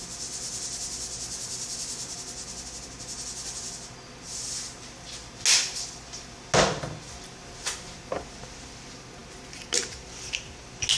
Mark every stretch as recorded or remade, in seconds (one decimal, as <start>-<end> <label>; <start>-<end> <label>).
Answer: 0.0-11.0 recorded